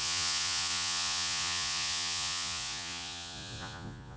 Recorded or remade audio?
remade